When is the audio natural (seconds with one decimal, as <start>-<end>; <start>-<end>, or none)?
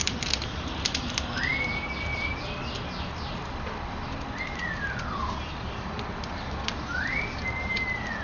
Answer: 0.0-8.2